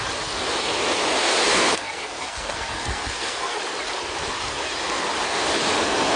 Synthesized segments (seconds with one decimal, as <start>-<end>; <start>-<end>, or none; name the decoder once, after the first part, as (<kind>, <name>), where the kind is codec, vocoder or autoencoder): 1.4-3.6 (codec, SNAC)